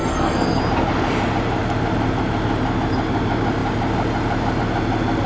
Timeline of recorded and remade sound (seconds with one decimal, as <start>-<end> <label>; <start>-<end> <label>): 0.0-0.6 remade; 0.6-5.3 recorded